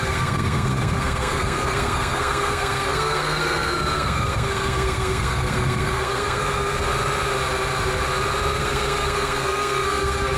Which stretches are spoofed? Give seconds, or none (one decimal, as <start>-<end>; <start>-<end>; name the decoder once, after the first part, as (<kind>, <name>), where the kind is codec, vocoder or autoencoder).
0.0-6.9 (codec, SNAC); 8.6-10.4